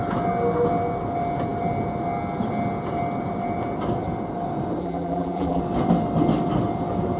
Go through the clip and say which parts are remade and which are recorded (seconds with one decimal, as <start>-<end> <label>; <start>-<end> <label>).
0.0-4.8 recorded; 4.8-5.6 remade; 5.6-7.2 recorded